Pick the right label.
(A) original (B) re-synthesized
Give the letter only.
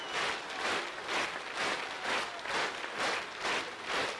A